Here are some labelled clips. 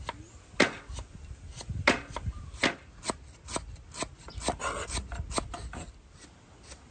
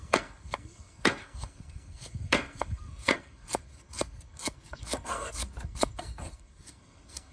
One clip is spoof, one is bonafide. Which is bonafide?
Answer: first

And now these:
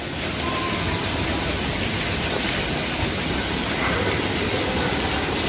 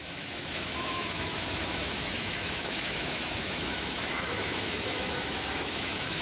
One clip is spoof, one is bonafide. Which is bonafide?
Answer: first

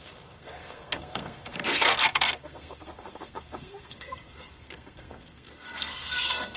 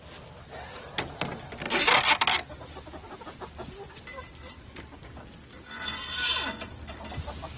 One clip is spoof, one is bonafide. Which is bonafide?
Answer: second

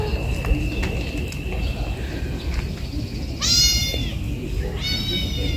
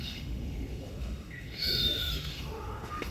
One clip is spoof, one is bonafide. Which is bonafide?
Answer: first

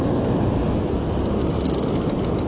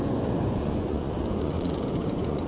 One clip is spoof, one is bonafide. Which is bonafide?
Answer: first